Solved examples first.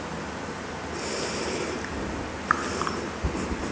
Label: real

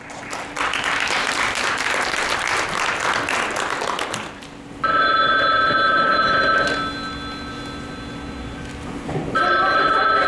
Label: real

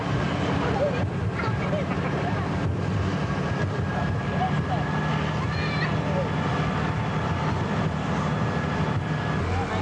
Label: real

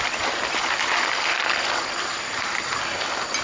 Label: real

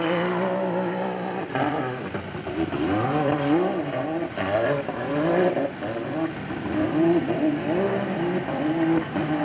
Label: fake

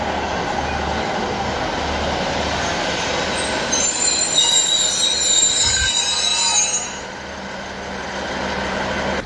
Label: real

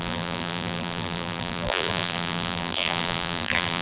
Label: fake